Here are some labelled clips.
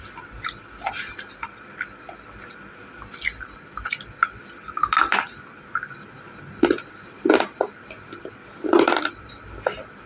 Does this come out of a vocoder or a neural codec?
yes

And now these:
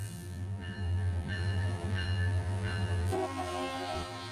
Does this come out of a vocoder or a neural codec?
yes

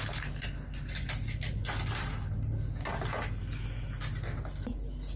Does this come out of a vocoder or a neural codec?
no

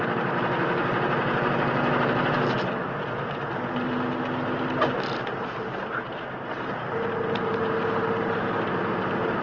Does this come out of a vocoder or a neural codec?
no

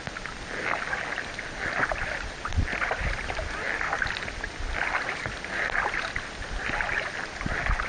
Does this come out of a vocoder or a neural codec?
no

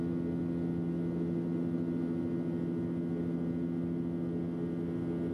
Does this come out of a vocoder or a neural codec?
no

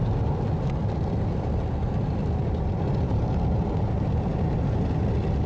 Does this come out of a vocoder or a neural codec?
no